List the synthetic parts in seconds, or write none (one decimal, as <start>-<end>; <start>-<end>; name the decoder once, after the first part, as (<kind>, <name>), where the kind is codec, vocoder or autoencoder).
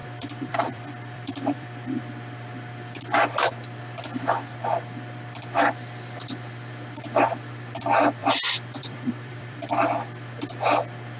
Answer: 0.0-2.0 (vocoder, BigVGAN v2); 8.2-9.7